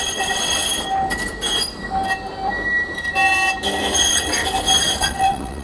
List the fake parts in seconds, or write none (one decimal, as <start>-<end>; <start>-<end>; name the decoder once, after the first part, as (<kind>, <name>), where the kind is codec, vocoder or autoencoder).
0.0-0.6 (vocoder, WaveNeXt); 4.0-4.4; 5.0-5.6